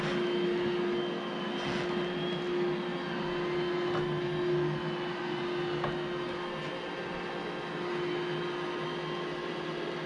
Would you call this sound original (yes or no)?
yes